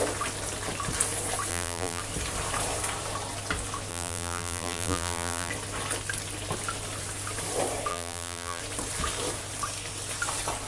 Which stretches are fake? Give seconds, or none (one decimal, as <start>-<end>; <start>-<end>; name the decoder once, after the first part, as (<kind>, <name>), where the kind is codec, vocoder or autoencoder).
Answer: 1.5-2.0 (vocoder, BigVGAN v2); 3.9-5.5; 7.9-8.6